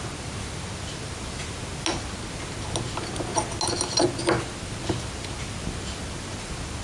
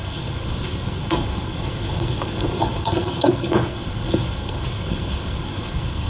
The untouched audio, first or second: first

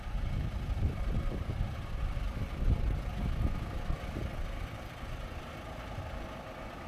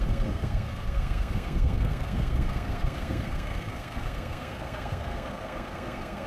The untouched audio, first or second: first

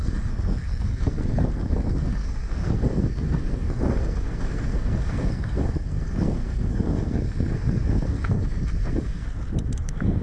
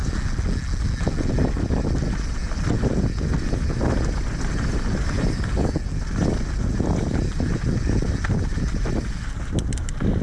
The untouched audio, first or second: second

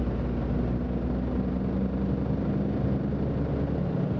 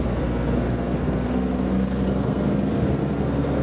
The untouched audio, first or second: first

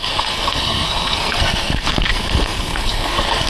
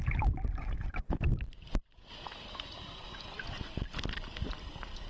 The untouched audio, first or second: second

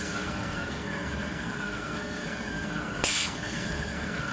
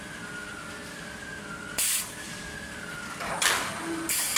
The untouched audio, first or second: second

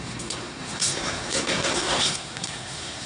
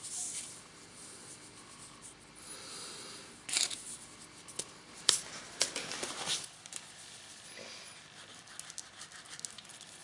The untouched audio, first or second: second